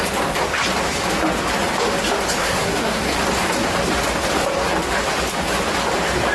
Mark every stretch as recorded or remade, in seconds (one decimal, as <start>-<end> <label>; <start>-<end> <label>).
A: 0.0-2.4 recorded; 2.4-3.0 remade; 3.0-6.3 recorded